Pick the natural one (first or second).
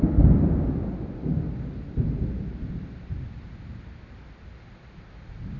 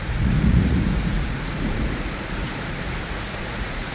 first